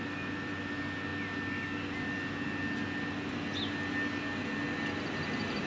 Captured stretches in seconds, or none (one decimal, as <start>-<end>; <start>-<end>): 0.0-5.7